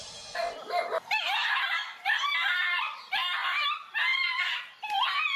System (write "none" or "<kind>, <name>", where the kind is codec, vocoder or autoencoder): none